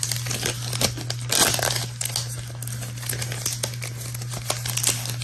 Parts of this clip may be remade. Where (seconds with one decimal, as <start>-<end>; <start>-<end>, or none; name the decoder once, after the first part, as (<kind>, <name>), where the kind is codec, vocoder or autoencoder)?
none